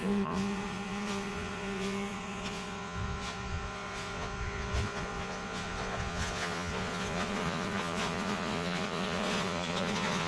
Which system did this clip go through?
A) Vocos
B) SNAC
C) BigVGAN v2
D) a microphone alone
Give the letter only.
A